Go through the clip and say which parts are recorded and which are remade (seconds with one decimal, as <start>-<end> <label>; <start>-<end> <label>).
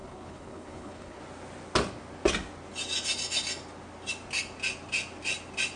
0.0-1.2 remade; 1.2-5.8 recorded